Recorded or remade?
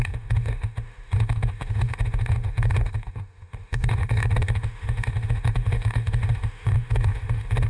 remade